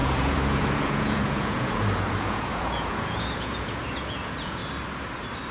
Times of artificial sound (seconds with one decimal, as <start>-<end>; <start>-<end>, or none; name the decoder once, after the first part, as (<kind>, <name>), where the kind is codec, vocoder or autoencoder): 0.0-4.6 (vocoder, Vocos)